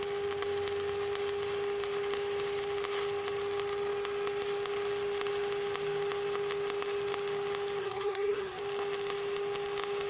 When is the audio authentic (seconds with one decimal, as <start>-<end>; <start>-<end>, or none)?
0.0-7.8; 8.6-10.1